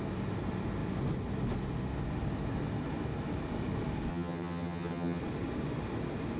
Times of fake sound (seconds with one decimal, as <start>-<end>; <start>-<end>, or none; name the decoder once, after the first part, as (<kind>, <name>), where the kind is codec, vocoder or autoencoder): 4.1-5.2 (vocoder, HiFi-GAN)